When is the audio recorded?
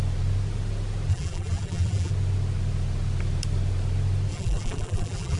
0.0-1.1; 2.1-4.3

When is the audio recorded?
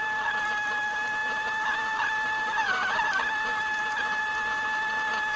0.0-1.2; 4.2-5.4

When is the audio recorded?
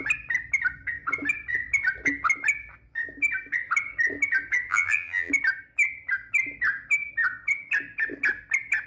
0.0-4.7; 5.3-8.9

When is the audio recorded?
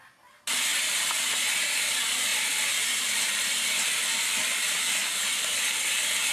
0.0-0.7; 1.3-2.3